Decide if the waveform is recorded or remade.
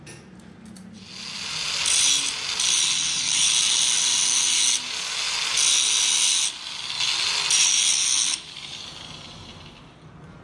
recorded